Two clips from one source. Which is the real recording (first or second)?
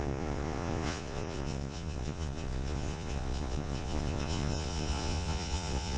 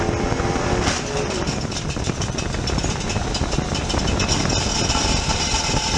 second